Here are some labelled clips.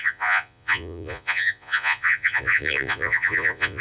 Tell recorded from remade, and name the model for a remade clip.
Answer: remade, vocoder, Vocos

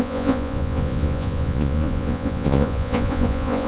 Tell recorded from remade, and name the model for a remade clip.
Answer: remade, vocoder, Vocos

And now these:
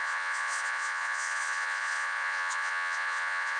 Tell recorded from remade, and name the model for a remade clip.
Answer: remade, vocoder, Vocos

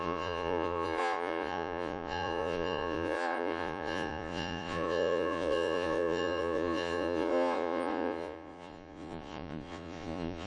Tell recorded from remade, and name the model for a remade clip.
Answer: remade, vocoder, Vocos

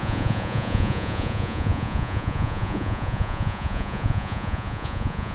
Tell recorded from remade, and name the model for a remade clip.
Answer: remade, vocoder, Vocos